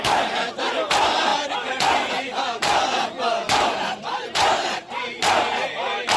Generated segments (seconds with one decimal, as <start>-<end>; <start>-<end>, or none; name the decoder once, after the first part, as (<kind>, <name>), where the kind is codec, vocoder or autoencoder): 0.0-1.3 (vocoder, BigVGAN v2); 2.1-5.2